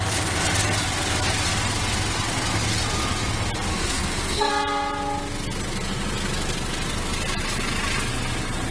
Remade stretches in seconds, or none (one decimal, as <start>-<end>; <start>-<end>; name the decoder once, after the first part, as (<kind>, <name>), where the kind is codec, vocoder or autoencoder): 3.7-4.5 (codec, SNAC)